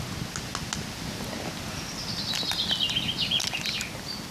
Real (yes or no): yes